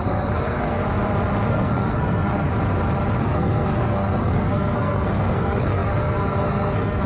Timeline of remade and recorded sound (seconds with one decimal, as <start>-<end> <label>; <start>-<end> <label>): 0.0-0.8 remade; 0.8-1.5 recorded; 1.5-2.5 remade; 2.5-3.2 recorded; 3.2-7.1 remade